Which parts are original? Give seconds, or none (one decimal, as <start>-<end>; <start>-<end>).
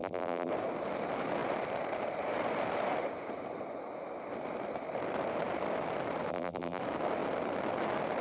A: 0.5-6.3; 6.8-8.2